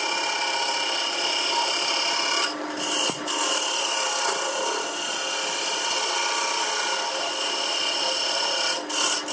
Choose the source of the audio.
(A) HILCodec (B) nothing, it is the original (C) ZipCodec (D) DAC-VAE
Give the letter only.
B